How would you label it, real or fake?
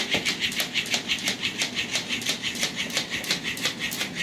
real